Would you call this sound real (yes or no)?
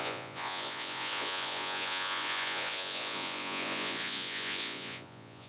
no